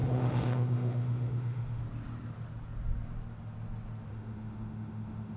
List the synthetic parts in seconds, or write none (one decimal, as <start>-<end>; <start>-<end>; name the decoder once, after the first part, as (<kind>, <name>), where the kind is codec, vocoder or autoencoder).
0.0-1.8 (autoencoder, DAC-VAE); 4.1-5.4